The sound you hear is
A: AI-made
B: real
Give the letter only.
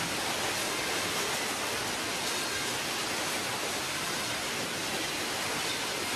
B